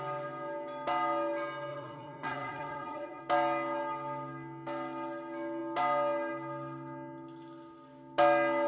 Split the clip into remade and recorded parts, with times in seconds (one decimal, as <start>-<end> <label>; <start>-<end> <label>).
0.0-1.7 recorded; 1.7-3.2 remade; 3.2-8.7 recorded

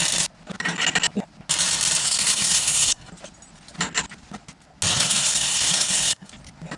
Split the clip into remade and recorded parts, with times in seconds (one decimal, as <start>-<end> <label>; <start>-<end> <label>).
0.0-2.0 recorded; 2.0-3.1 remade; 3.1-4.9 recorded; 4.9-6.3 remade; 6.3-6.8 recorded

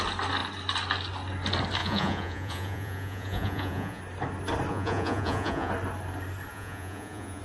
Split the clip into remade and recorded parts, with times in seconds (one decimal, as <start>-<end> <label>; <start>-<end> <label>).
0.0-1.8 recorded; 1.8-4.0 remade; 4.0-4.7 recorded; 4.7-5.7 remade; 5.7-6.5 recorded; 6.5-7.4 remade

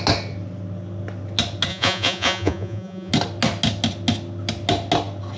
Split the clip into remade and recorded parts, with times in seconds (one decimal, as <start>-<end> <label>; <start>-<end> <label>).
0.0-1.7 recorded; 1.7-3.1 remade; 3.1-5.4 recorded

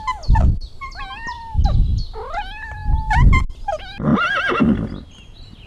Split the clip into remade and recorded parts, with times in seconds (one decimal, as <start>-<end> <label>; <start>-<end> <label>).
0.0-5.7 recorded

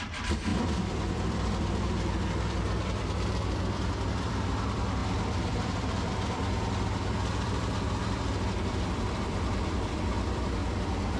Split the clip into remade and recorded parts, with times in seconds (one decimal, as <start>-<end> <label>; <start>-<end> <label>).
0.0-10.6 remade; 10.6-11.2 recorded